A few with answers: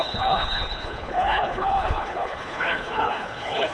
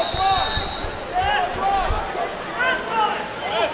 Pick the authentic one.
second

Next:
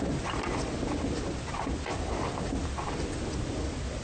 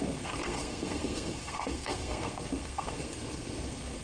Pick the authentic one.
first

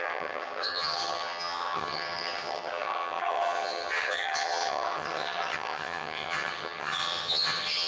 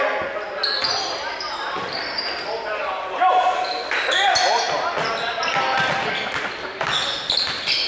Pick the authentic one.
second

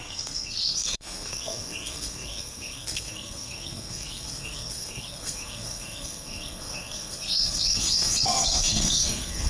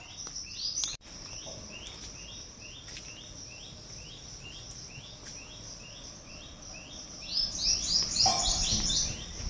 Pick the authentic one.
second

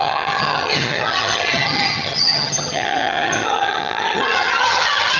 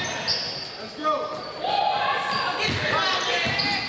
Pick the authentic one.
second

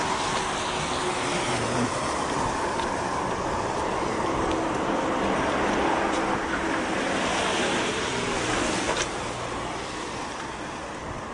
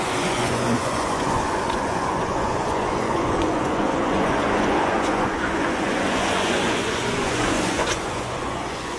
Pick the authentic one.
first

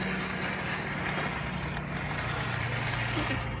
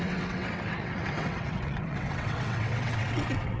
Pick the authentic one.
first